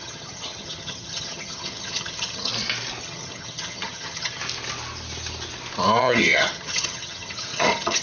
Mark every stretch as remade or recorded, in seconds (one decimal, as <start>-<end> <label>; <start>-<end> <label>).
0.0-2.5 remade; 2.5-3.0 recorded; 3.0-4.4 remade; 4.4-6.0 recorded; 6.0-8.0 remade